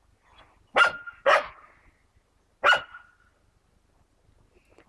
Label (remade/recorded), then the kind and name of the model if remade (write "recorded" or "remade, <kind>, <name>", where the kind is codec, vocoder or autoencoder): recorded